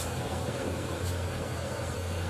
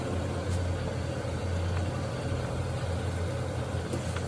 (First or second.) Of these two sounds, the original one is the second